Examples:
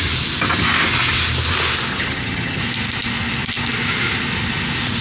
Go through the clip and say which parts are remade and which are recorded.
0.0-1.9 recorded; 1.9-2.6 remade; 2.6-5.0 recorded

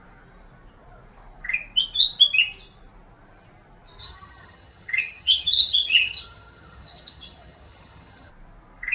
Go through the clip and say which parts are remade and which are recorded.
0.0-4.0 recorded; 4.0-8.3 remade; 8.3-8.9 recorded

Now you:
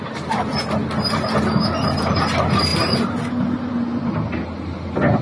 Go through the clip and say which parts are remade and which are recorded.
0.0-5.2 recorded

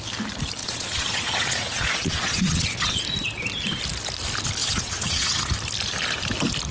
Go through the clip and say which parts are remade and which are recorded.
0.0-0.6 recorded; 0.6-3.0 remade; 3.0-4.6 recorded; 4.6-5.5 remade; 5.5-6.7 recorded

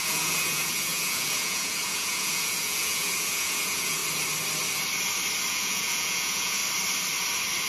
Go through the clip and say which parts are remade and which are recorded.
0.0-4.0 remade; 4.0-5.5 recorded; 5.5-6.6 remade; 6.6-7.7 recorded

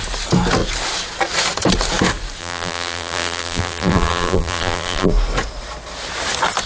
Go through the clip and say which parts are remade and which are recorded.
0.0-2.4 recorded; 2.4-5.1 remade; 5.1-6.7 recorded

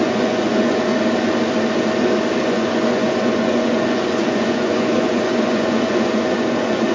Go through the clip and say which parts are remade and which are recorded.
0.0-0.9 remade; 0.9-2.4 recorded; 2.4-6.9 remade